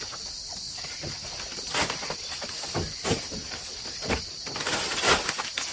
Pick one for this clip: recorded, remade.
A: recorded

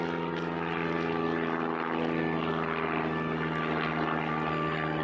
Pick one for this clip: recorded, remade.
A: recorded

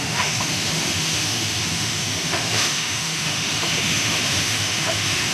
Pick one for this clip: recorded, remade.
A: remade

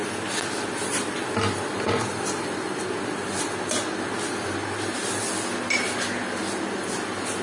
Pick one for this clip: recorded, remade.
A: recorded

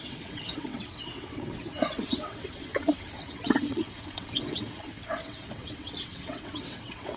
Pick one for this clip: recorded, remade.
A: remade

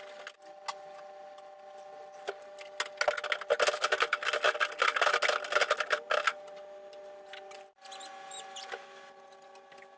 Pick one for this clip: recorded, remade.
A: recorded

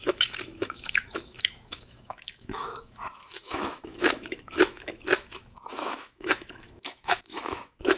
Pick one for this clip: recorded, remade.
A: remade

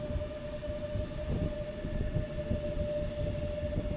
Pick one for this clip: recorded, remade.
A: recorded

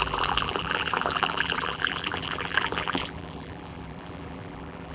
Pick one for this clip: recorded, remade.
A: remade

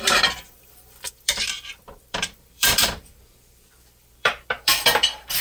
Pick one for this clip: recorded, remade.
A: remade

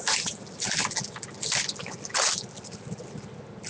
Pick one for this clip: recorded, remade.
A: recorded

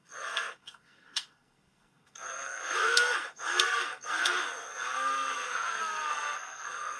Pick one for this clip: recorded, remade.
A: remade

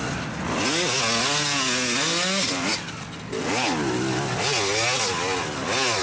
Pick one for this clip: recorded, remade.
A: recorded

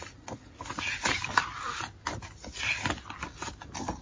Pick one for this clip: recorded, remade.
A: recorded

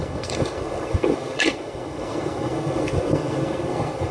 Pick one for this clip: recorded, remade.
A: remade